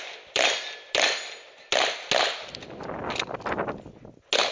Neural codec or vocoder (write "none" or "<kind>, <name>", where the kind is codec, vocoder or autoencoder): none